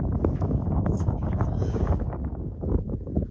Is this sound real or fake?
fake